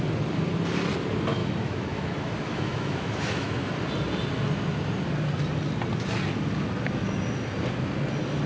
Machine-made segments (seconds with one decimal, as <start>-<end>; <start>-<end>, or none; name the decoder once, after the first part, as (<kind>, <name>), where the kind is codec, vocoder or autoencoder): 1.4-3.7 (autoencoder, DAC-VAE)